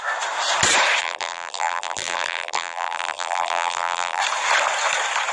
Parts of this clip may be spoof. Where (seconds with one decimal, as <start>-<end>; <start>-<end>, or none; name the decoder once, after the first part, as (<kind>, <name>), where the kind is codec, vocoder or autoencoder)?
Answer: 1.0-4.2 (vocoder, BigVGAN v2)